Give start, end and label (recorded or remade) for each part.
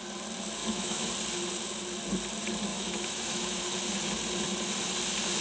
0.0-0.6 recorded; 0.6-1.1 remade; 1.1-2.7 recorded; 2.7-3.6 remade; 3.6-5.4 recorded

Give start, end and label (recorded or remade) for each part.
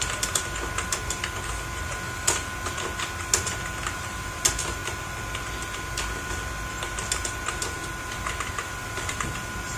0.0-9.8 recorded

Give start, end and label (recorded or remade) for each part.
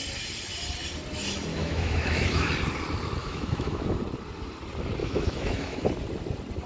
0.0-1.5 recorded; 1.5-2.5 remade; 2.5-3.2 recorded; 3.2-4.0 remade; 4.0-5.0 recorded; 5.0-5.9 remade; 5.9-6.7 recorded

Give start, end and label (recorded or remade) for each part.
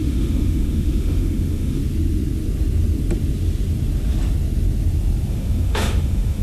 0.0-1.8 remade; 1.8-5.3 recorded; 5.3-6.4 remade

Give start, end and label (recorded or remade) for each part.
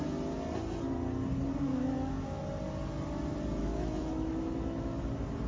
0.0-1.7 recorded; 1.7-2.4 remade; 2.4-3.6 recorded; 3.6-5.1 remade; 5.1-5.5 recorded